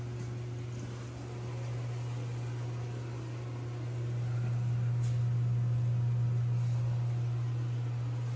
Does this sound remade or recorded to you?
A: recorded